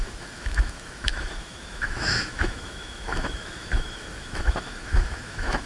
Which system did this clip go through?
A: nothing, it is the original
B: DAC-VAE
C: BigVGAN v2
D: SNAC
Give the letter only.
B